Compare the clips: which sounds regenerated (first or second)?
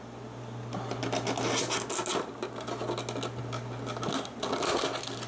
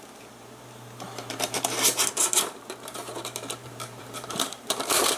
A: second